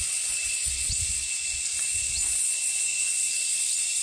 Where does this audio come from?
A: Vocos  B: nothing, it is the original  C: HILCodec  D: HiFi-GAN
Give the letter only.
A